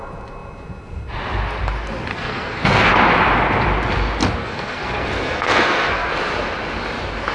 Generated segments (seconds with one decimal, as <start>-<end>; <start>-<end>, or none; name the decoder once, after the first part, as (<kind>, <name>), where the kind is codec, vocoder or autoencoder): 2.1-2.9 (codec, SNAC); 4.4-6.1